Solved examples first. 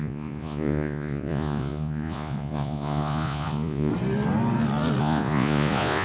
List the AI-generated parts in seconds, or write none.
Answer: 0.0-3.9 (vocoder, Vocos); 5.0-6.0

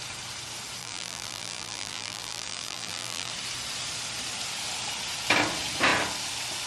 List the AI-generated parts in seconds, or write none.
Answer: 0.8-3.3 (vocoder, BigVGAN v2)

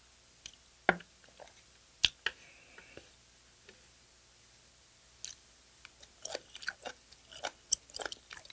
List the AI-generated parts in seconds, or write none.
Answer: none

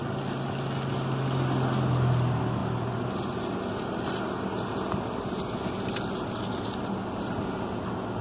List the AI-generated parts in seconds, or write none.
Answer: none

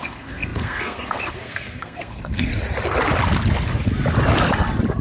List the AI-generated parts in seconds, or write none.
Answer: 0.0-2.5 (codec, SNAC)

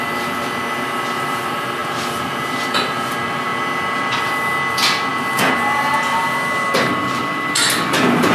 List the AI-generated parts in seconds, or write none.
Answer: none

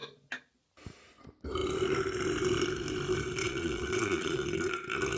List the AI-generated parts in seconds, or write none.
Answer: 3.4-4.7 (vocoder, Vocos)

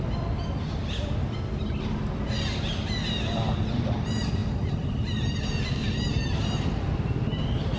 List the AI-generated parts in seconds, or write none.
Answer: none